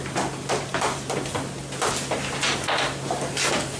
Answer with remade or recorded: recorded